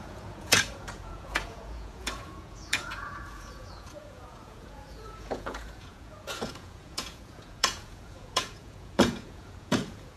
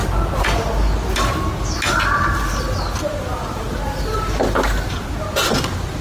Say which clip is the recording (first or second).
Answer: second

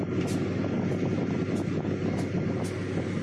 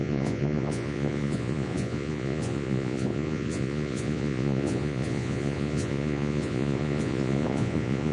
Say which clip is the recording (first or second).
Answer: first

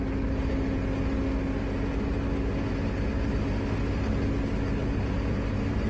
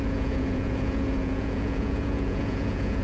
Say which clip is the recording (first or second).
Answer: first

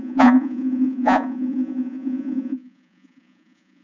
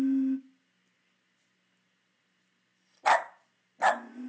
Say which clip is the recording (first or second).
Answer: second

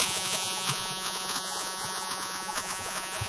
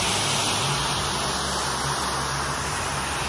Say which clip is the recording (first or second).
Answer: second